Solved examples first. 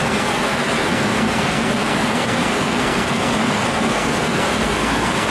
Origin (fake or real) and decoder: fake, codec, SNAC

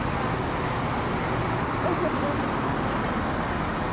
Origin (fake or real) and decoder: real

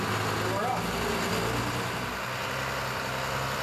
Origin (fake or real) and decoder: real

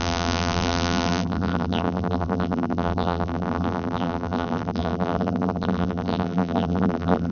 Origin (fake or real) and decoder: fake, vocoder, BigVGAN v2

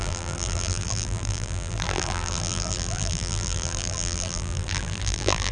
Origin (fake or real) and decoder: fake, vocoder, BigVGAN v2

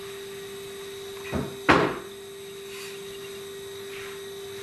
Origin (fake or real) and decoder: real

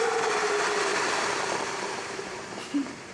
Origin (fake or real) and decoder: fake, vocoder, BigVGAN v2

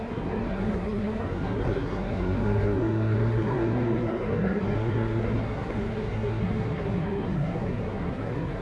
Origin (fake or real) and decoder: fake, codec, SNAC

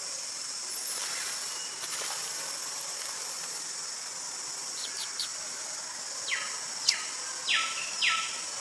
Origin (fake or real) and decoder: real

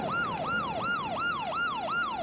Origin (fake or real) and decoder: real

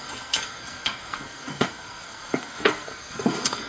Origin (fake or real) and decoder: fake, codec, SNAC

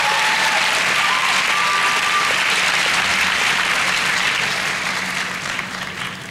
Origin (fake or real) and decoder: real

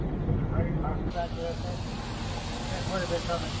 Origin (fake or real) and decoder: real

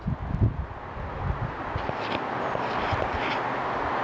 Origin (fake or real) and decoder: real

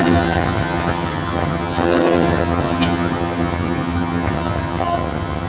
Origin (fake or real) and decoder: fake, vocoder, HiFi-GAN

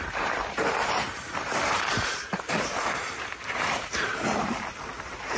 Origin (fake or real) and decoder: fake, vocoder, BigVGAN v2